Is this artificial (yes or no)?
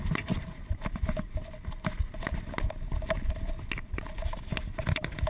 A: no